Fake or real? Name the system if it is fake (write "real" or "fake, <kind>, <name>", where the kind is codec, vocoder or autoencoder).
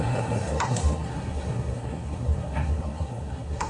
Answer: fake, codec, SNAC